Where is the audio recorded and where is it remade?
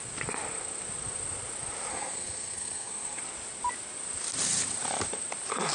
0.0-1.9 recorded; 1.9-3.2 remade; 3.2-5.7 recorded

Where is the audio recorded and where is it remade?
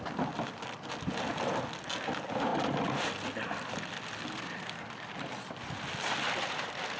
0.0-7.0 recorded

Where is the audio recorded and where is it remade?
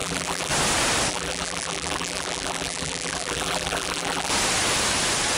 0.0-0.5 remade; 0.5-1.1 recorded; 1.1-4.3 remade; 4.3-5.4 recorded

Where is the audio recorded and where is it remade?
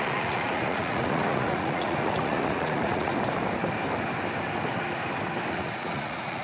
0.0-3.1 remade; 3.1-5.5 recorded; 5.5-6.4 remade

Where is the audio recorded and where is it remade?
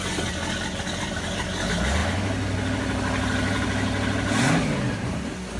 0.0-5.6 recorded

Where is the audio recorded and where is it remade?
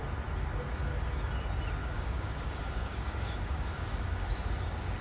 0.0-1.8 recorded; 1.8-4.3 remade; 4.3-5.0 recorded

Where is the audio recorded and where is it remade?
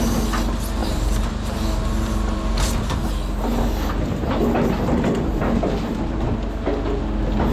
0.0-0.8 recorded; 0.8-3.1 remade; 3.1-5.3 recorded; 5.3-6.3 remade; 6.3-7.5 recorded